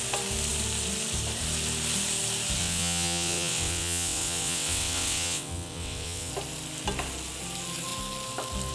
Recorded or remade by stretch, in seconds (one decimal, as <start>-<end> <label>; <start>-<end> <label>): 0.0-2.6 recorded; 2.6-6.3 remade; 6.3-8.7 recorded